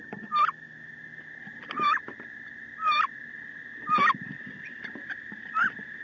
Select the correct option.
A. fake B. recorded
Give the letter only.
B